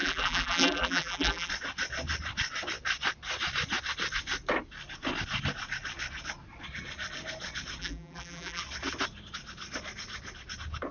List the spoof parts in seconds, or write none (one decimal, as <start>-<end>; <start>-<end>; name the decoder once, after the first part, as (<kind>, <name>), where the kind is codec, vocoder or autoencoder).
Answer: 0.0-1.5 (vocoder, BigVGAN v2); 7.8-8.6